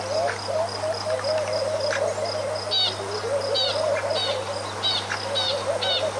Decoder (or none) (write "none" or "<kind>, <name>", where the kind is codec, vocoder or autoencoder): none